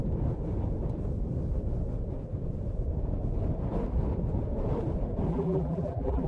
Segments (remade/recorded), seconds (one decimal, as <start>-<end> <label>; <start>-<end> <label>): 0.0-5.3 recorded; 5.3-6.3 remade